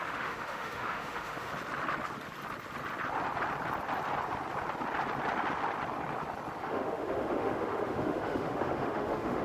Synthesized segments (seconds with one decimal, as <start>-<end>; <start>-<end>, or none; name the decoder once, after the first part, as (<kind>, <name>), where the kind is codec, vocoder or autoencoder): 0.0-1.5 (autoencoder, DAC-VAE); 6.6-9.4